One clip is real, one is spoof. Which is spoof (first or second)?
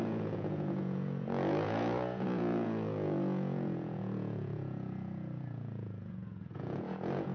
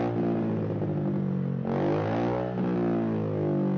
first